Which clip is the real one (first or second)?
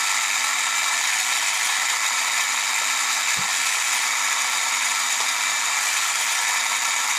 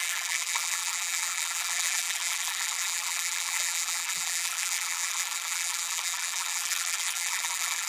first